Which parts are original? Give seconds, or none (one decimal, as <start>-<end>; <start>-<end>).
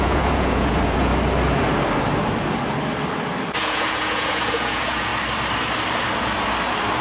1.1-3.6; 5.1-7.0